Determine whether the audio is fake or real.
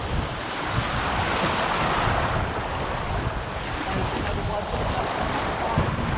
real